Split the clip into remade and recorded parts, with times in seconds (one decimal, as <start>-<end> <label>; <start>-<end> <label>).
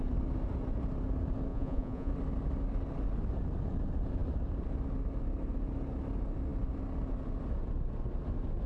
0.0-1.5 recorded; 1.5-2.1 remade; 2.1-8.7 recorded